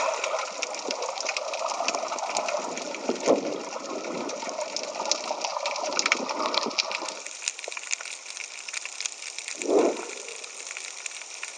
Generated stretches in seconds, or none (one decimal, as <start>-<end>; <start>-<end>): none